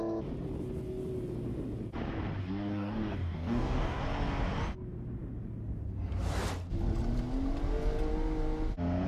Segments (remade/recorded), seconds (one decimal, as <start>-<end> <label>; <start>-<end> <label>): 0.0-2.4 recorded; 2.4-4.0 remade; 4.0-9.1 recorded